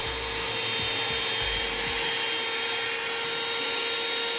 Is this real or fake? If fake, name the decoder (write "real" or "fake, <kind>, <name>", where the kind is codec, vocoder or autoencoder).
real